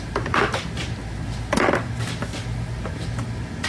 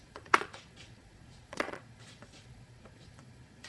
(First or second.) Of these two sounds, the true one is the first